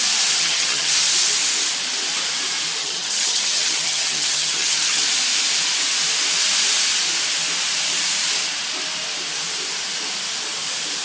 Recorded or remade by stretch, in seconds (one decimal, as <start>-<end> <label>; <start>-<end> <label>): 0.0-0.4 recorded; 0.4-0.9 remade; 0.9-2.8 recorded; 2.8-5.0 remade; 5.0-11.0 recorded